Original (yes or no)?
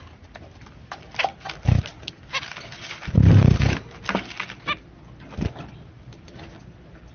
yes